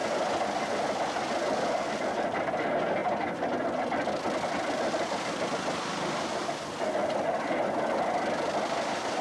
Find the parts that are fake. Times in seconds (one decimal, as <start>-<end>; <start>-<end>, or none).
none